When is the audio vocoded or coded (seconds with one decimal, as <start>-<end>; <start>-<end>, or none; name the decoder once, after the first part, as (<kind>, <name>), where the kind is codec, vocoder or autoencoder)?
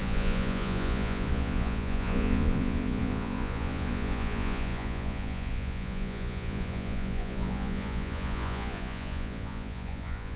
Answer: 0.0-10.4 (vocoder, Vocos)